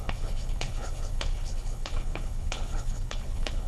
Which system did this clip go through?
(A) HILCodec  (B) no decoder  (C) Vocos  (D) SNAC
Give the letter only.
A